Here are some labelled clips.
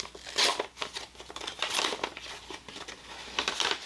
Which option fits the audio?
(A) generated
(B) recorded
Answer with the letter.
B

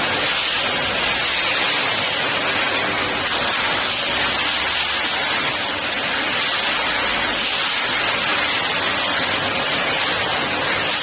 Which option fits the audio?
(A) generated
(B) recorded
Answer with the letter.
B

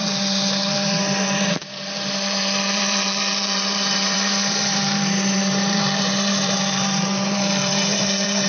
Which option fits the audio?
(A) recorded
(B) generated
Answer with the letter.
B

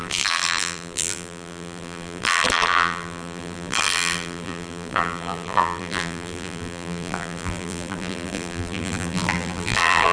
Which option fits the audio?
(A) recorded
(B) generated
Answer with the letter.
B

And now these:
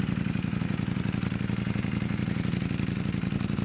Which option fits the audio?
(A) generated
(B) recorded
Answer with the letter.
A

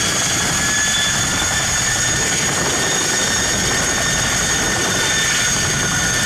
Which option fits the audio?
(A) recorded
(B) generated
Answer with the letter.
A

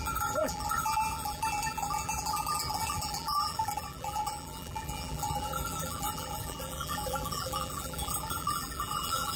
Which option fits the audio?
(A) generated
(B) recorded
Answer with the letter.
A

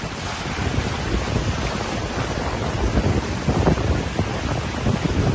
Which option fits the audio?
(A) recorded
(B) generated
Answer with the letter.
A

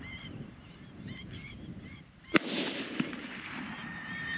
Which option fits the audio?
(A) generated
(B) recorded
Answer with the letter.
A